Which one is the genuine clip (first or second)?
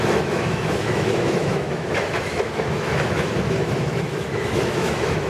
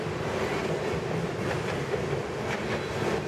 second